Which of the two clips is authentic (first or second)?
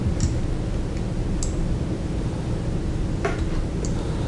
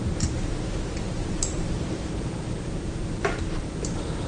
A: first